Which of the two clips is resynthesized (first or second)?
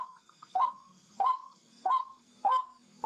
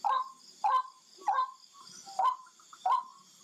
first